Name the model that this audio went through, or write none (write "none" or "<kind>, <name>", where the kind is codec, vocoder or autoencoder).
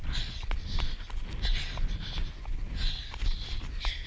none